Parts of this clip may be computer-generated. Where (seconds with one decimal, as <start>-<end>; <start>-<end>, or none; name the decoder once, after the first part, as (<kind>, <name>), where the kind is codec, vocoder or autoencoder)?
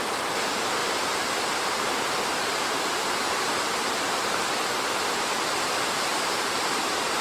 0.8-3.8 (vocoder, BigVGAN v2); 6.1-7.2